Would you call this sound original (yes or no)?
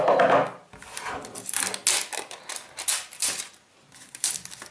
yes